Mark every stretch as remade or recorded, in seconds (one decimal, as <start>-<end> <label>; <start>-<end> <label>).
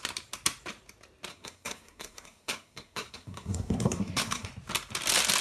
0.0-1.3 recorded; 1.3-4.5 remade; 4.5-5.4 recorded